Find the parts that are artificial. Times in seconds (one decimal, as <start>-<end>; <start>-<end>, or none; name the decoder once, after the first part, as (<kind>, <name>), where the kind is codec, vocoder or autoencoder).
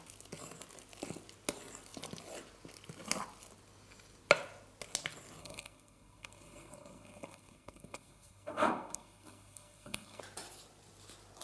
5.4-10.2 (codec, SNAC)